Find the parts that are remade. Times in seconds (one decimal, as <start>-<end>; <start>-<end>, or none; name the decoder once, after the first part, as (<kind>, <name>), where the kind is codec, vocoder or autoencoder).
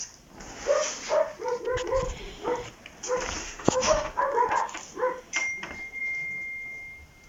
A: 3.4-4.2 (autoencoder, DAC-VAE)